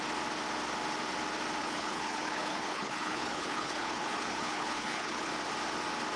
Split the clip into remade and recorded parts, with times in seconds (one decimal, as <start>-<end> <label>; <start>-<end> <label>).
0.0-1.6 recorded; 1.6-5.3 remade; 5.3-6.2 recorded